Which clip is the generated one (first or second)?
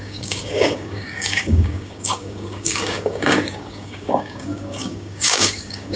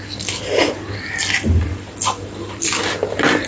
first